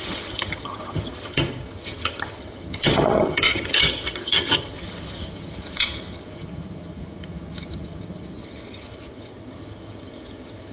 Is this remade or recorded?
remade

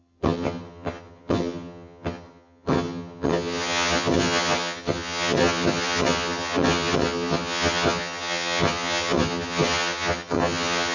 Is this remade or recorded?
remade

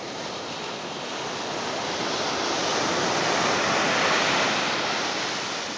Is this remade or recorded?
recorded